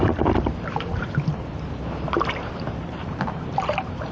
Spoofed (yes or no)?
yes